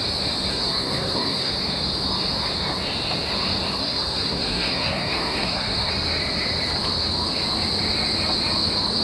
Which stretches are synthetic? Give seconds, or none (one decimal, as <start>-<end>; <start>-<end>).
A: 0.5-1.5; 3.8-5.9